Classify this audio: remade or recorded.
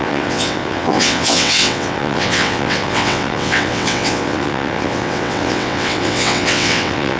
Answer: remade